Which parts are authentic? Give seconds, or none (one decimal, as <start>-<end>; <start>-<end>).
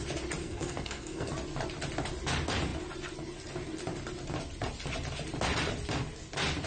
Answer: 0.0-0.4; 1.3-6.7